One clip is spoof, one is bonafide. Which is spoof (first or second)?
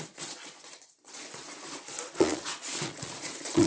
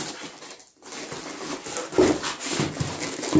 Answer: first